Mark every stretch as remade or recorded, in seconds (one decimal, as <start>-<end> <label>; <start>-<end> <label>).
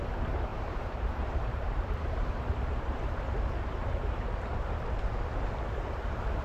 0.0-0.5 recorded; 0.5-4.3 remade; 4.3-5.3 recorded; 5.3-6.4 remade